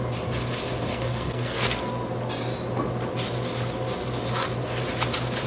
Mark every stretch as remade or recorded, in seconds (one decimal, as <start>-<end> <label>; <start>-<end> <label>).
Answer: 0.0-0.9 recorded; 0.9-1.9 remade; 1.9-5.5 recorded